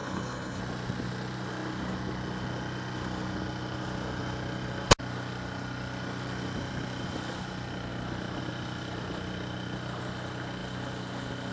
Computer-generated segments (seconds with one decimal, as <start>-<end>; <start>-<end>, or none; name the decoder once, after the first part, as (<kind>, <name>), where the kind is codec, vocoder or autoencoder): 0.0-0.6 (codec, HILCodec)